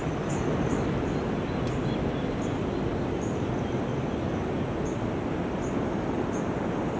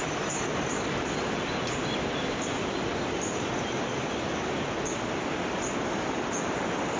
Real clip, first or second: first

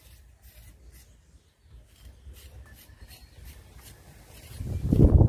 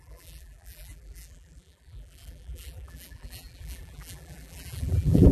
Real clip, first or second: first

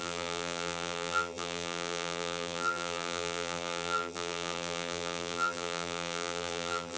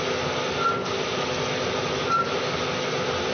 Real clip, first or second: second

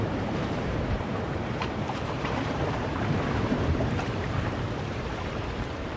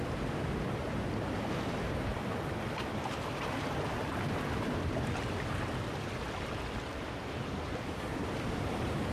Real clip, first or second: second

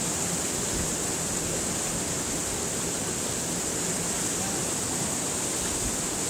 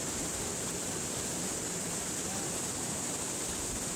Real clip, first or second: first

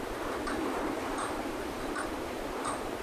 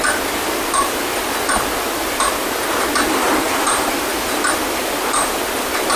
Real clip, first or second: second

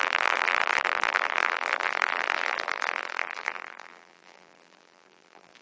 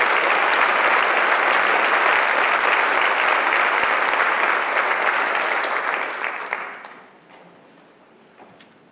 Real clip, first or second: second